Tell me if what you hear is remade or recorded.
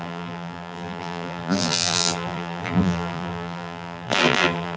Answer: remade